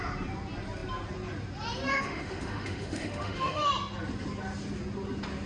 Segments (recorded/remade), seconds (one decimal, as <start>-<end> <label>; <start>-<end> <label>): 0.0-1.9 recorded; 1.9-3.7 remade; 3.7-5.5 recorded